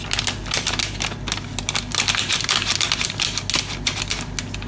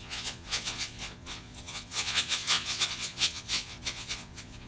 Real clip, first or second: first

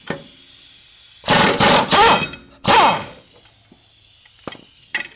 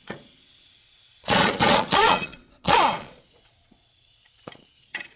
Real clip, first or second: first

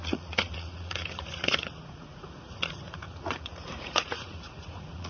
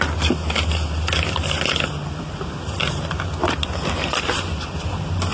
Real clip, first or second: second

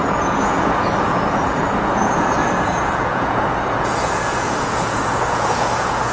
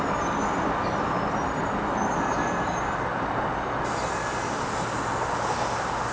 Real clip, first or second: second